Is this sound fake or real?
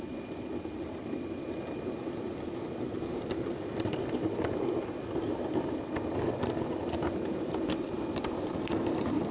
real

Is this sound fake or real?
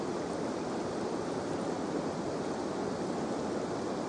real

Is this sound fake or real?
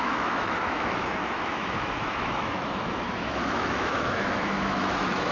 fake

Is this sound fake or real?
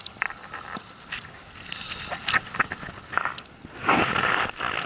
real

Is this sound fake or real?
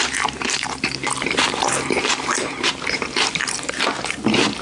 fake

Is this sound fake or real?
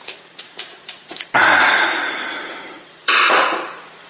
fake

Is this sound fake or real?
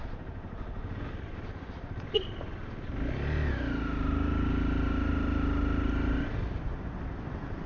real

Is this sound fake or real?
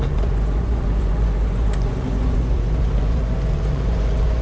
fake